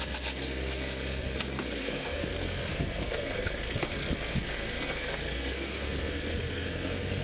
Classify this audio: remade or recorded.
remade